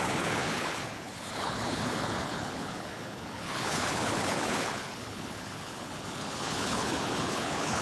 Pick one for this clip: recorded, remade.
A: remade